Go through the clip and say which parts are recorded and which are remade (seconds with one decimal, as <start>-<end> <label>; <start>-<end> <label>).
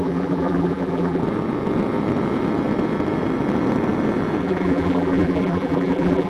0.0-1.2 remade; 1.2-4.4 recorded; 4.4-6.3 remade